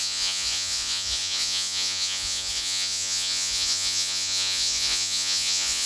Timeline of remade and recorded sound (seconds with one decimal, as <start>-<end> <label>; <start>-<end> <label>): 0.0-5.9 remade